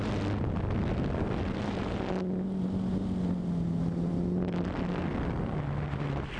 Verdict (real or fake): real